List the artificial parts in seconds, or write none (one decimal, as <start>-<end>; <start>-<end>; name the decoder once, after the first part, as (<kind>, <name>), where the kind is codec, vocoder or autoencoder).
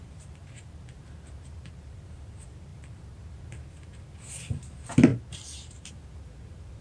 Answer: 0.0-6.8 (vocoder, BigVGAN v2)